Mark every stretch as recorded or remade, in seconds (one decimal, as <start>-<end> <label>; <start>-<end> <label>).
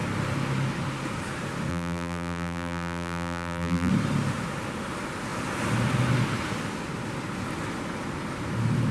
0.0-1.7 recorded; 1.7-3.9 remade; 3.9-8.9 recorded